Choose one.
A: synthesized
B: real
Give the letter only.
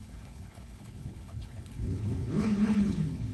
A